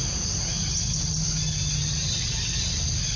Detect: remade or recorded recorded